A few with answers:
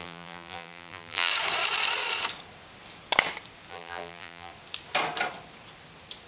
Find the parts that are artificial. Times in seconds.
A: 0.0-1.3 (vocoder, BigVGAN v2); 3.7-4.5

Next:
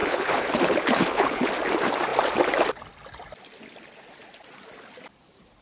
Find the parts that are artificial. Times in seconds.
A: 0.0-1.5 (codec, HILCodec)

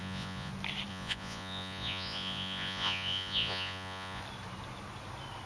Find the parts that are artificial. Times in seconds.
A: 0.0-0.5 (vocoder, Vocos); 0.9-4.2

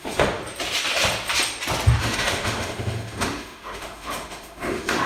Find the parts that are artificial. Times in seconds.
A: 0.0-0.4 (autoencoder, DAC-VAE); 2.0-5.1